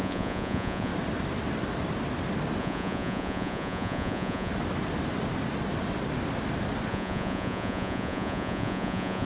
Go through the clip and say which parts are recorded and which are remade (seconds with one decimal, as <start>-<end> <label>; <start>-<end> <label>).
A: 0.0-0.9 remade; 0.9-2.6 recorded; 2.6-4.5 remade; 4.5-6.9 recorded; 6.9-9.2 remade